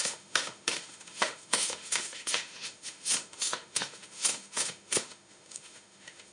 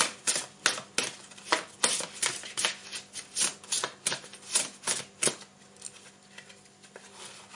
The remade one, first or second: first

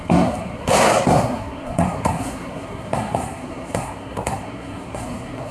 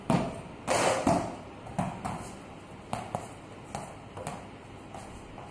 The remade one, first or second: first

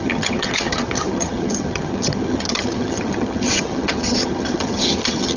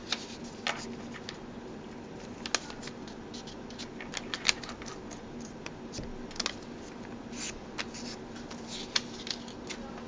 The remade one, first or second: first